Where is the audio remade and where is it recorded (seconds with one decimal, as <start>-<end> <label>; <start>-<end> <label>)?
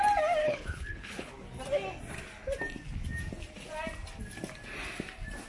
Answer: 0.0-0.4 recorded; 0.4-1.3 remade; 1.3-5.5 recorded